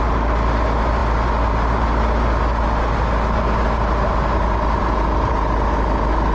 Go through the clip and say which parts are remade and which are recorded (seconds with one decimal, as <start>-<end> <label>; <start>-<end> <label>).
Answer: 0.0-6.3 recorded